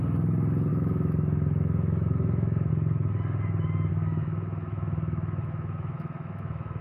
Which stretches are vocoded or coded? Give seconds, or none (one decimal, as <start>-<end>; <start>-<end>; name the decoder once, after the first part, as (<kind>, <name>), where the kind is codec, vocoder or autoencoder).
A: 0.7-2.7 (autoencoder, DAC-VAE); 3.9-6.8